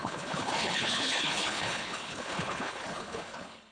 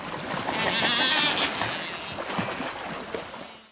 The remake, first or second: first